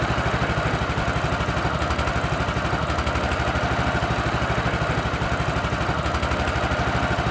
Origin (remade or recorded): recorded